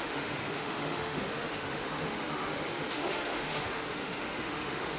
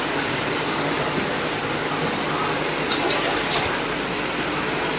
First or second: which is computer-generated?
first